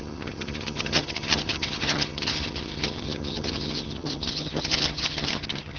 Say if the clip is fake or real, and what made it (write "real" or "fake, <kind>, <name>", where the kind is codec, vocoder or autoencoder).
fake, vocoder, HiFi-GAN